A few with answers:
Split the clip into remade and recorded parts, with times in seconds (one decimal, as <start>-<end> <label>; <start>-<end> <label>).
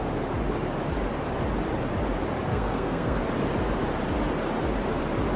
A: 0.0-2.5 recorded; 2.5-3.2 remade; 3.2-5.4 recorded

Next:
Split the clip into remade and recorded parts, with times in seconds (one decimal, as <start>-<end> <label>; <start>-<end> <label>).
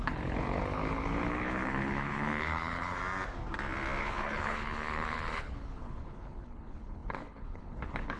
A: 0.0-3.0 remade; 3.0-4.0 recorded; 4.0-8.2 remade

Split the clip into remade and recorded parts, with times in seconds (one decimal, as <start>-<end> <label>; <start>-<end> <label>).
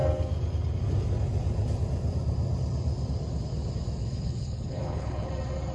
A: 0.0-4.0 recorded; 4.0-5.3 remade; 5.3-5.7 recorded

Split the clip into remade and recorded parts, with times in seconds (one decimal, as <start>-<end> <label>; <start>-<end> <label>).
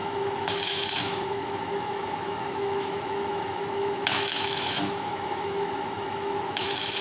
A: 0.0-7.0 remade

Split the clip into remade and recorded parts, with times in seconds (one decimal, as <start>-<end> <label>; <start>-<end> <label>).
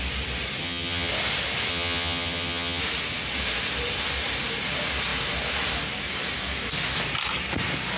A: 0.0-0.6 recorded; 0.6-1.1 remade; 1.1-1.7 recorded; 1.7-2.8 remade; 2.8-8.0 recorded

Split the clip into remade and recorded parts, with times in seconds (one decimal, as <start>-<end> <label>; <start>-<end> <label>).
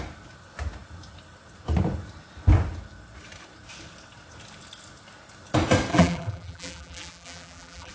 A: 0.0-5.9 recorded; 5.9-7.9 remade